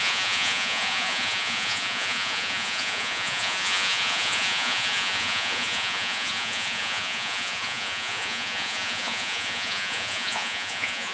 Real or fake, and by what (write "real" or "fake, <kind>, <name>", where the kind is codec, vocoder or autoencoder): fake, vocoder, Vocos